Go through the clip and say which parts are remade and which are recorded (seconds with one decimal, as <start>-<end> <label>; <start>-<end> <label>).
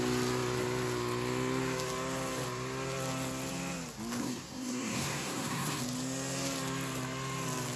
0.0-4.2 recorded; 4.2-5.8 remade; 5.8-7.8 recorded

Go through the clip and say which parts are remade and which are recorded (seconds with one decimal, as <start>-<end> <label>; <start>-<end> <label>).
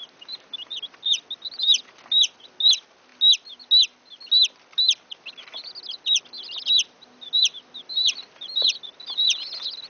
0.0-9.9 recorded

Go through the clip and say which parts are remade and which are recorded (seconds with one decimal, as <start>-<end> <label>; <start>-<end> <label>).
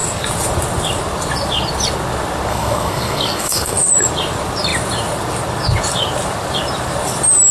0.0-2.5 recorded; 2.5-3.9 remade; 3.9-7.5 recorded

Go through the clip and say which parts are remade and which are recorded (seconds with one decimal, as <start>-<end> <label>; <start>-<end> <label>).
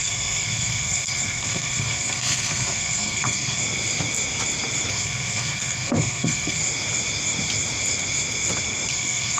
0.0-3.6 remade; 3.6-4.9 recorded; 4.9-6.6 remade; 6.6-8.9 recorded; 8.9-9.4 remade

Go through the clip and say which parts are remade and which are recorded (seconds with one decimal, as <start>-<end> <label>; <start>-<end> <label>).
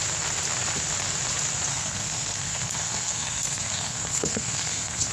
0.0-1.7 recorded; 1.7-5.1 remade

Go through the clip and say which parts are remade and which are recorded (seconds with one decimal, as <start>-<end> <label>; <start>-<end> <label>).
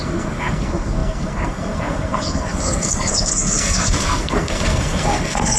0.0-5.6 remade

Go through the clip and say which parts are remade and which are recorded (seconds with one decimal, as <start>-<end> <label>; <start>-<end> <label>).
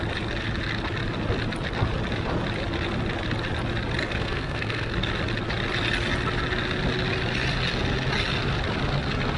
0.0-4.1 recorded; 4.1-4.9 remade; 4.9-9.4 recorded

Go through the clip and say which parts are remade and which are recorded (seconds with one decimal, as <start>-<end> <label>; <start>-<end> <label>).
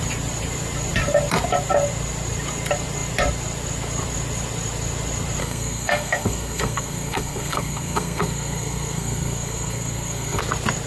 0.0-5.4 recorded; 5.4-10.4 remade; 10.4-10.9 recorded